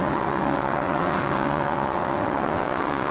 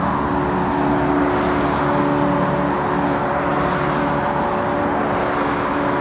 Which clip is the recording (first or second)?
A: second